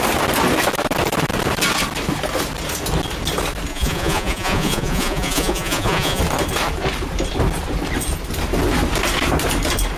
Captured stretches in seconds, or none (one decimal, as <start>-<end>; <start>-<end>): 0.0-3.7; 6.2-10.0